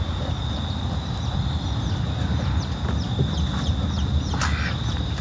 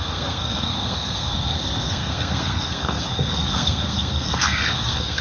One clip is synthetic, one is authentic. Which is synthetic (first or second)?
second